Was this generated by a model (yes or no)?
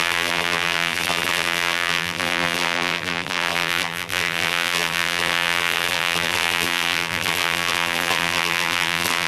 yes